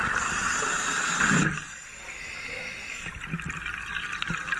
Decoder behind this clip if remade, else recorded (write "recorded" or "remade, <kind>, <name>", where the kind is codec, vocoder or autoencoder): recorded